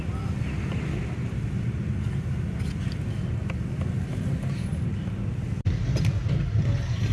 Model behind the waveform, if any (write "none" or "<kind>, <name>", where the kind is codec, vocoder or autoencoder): none